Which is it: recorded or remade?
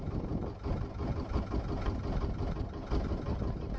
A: recorded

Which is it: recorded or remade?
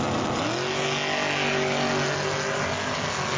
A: recorded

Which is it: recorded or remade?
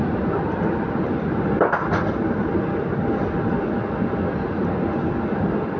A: recorded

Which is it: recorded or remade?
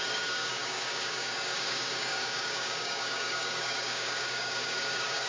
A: remade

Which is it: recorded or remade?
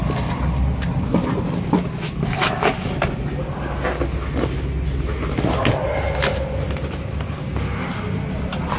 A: recorded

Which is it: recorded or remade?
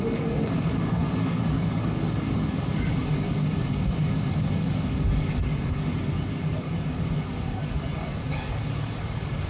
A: remade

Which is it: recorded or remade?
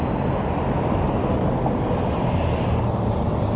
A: recorded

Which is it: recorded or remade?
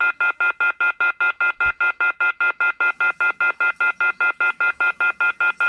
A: recorded